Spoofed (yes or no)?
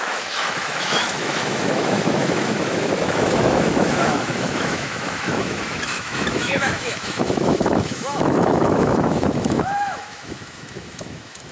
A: yes